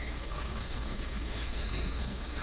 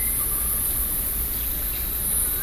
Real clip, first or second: second